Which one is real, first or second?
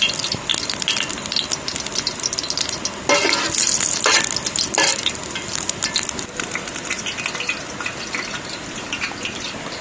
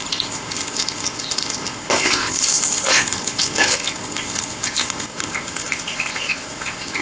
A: first